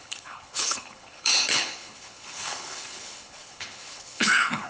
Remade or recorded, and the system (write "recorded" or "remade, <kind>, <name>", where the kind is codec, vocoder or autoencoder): remade, codec, HILCodec